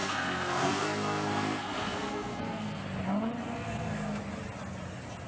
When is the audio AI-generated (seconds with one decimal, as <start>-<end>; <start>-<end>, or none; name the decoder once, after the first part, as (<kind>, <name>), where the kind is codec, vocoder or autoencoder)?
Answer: 0.0-2.8 (codec, SNAC); 3.4-4.2